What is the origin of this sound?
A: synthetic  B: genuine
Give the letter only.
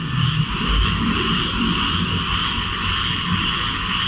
A